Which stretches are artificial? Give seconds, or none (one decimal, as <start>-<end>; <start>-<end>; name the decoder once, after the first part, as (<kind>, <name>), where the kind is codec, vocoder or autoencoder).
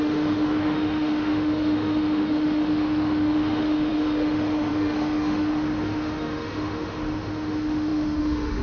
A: 0.0-8.6 (autoencoder, DAC-VAE)